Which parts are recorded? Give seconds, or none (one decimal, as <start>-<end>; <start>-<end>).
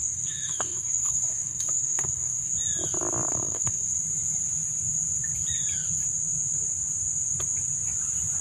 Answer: 2.5-3.3; 4.0-8.4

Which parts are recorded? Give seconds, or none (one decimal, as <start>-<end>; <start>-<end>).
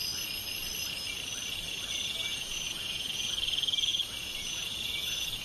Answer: 0.0-2.3; 3.3-3.9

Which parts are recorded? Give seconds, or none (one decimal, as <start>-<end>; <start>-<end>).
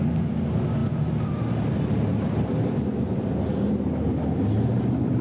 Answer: 0.0-5.2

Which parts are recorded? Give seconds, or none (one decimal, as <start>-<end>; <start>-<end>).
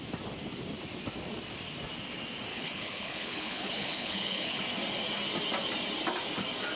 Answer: 0.0-2.5; 4.6-6.8